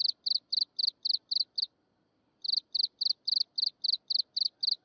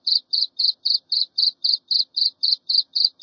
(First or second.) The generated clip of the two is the second